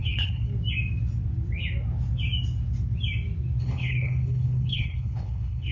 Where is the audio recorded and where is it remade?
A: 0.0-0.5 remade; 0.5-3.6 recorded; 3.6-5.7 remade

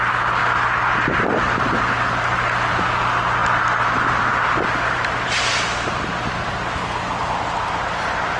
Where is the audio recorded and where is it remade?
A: 0.0-8.4 recorded

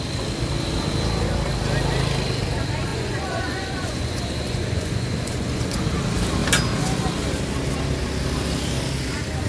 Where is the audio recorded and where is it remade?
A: 0.0-2.9 recorded; 2.9-5.8 remade; 5.8-9.5 recorded

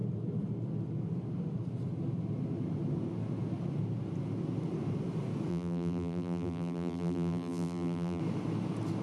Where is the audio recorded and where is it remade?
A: 0.0-5.5 recorded; 5.5-8.2 remade; 8.2-9.0 recorded

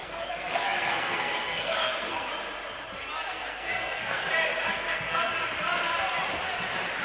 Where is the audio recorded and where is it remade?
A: 0.0-2.3 remade; 2.3-3.3 recorded; 3.3-4.2 remade; 4.2-4.7 recorded; 4.7-5.3 remade; 5.3-7.0 recorded

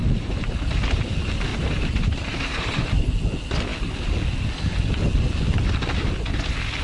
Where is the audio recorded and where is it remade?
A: 0.0-1.5 recorded; 1.5-3.1 remade; 3.1-6.8 recorded

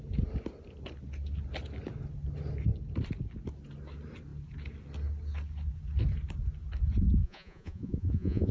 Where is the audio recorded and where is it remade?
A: 0.0-7.2 recorded; 7.2-8.5 remade

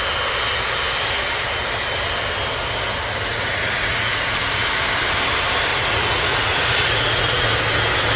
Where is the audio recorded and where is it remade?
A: 0.0-3.3 recorded; 3.3-4.5 remade; 4.5-5.7 recorded; 5.7-7.5 remade; 7.5-8.2 recorded